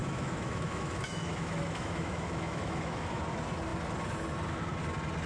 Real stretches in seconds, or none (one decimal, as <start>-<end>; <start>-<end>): 3.2-5.3